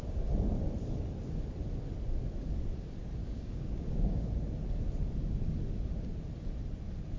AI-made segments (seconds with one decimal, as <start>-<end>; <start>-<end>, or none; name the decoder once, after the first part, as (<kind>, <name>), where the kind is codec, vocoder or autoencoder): 3.2-4.3 (codec, DAC)